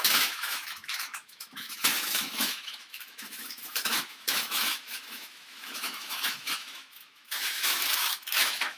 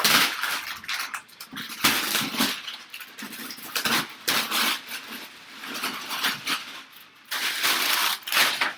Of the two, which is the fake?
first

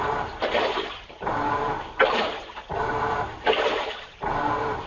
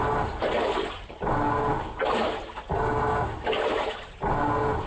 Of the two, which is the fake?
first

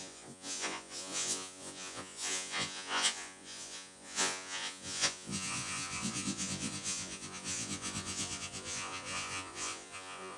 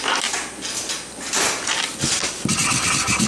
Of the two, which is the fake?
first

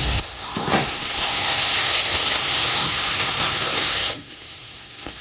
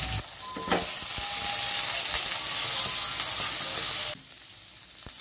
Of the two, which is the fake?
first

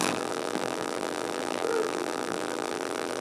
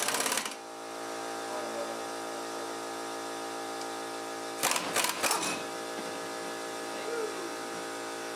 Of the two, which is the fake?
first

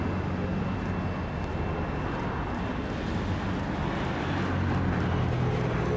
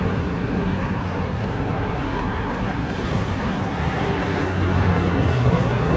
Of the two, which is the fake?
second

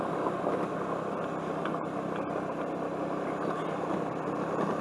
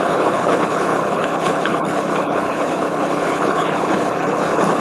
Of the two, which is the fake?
second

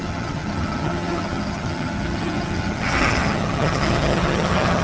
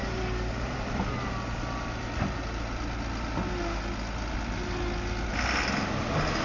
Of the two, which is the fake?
first